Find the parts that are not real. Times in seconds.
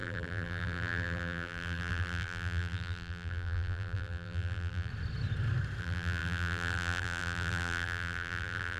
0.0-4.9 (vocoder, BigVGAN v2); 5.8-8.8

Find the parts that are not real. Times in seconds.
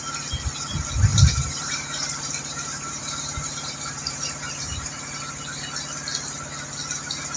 1.1-5.2 (vocoder, BigVGAN v2)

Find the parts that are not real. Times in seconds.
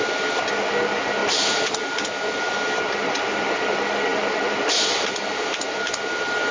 none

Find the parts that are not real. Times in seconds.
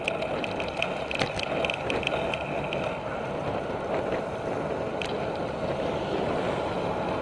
none